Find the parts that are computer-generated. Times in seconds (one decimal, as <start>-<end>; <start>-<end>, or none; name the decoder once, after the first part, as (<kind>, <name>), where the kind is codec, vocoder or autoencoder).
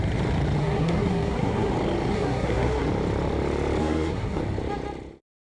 0.6-1.7 (codec, SNAC); 2.1-2.9; 3.8-4.4